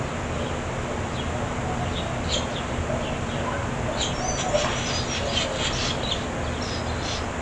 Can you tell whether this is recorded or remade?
recorded